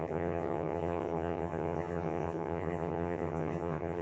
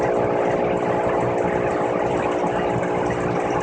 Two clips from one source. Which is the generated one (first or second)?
first